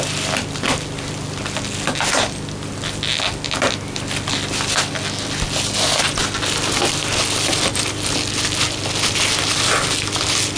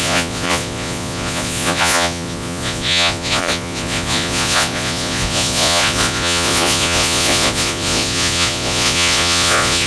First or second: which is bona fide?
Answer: first